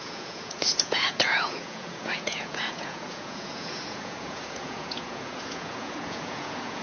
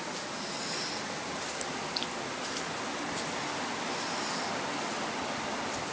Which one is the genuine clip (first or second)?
second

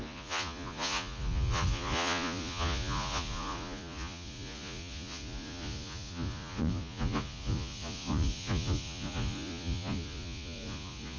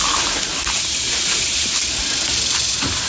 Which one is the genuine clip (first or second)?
second